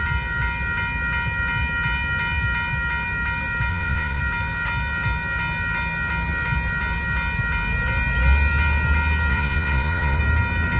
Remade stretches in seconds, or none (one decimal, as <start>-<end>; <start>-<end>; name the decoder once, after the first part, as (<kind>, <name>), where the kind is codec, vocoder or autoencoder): 3.7-4.2 (vocoder, Vocos); 9.3-10.2

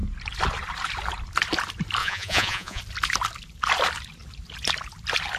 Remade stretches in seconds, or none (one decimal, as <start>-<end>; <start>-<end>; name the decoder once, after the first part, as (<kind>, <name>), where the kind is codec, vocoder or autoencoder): 2.0-2.8 (vocoder, Vocos)

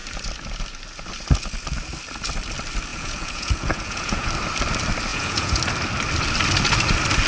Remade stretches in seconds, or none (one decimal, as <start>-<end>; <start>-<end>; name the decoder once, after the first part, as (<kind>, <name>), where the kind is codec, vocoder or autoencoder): 2.9-4.3 (vocoder, Vocos); 5.1-5.6